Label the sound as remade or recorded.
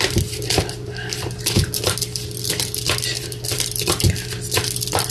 recorded